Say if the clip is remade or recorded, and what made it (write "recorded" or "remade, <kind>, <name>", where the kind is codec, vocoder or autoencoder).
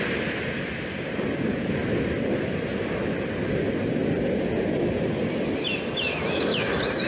recorded